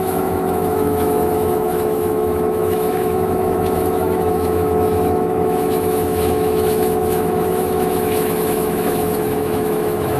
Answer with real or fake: fake